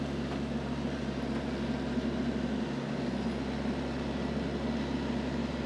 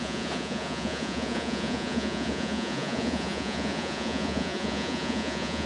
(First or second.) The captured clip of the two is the first